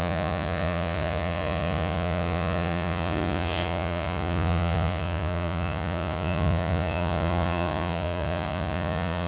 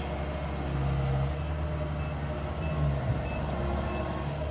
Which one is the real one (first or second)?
second